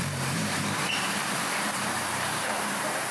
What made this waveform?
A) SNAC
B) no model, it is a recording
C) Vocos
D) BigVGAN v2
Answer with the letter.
D